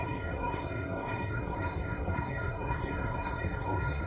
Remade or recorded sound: remade